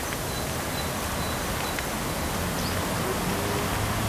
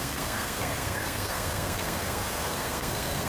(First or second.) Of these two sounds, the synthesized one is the second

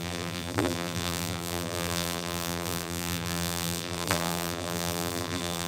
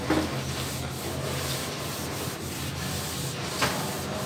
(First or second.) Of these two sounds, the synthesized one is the first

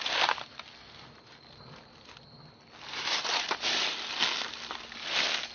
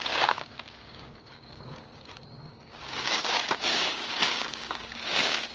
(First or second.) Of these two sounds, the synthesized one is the second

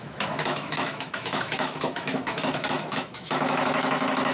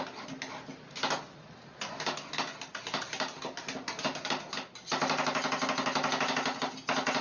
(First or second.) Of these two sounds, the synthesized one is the first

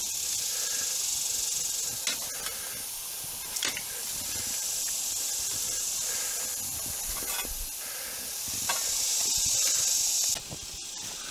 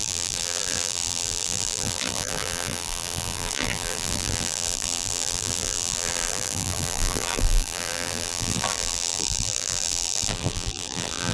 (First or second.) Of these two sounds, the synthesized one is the second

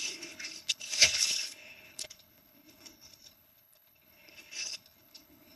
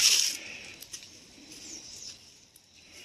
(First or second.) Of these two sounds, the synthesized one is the first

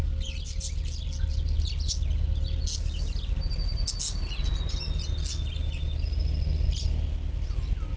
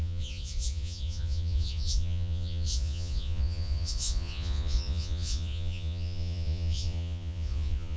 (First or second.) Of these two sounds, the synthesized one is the second